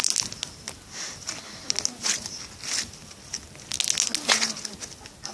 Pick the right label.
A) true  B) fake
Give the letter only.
A